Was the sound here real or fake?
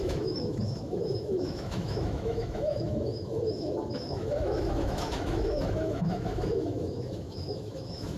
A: fake